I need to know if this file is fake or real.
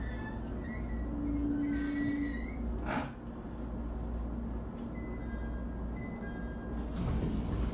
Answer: real